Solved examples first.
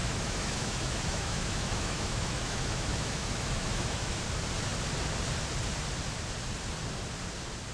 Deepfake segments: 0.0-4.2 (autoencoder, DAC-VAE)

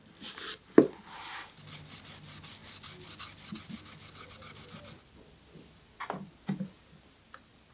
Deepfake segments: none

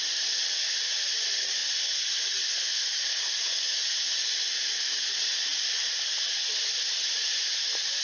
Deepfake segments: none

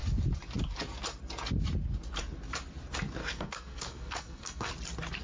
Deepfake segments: 3.2-4.7 (codec, SNAC)

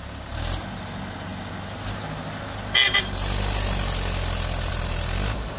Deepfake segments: none